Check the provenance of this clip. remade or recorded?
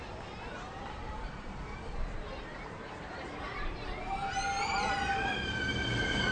remade